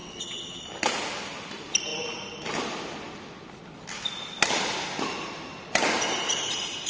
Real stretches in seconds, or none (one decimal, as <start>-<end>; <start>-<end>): 0.6-6.9